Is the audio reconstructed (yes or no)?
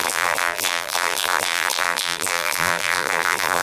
yes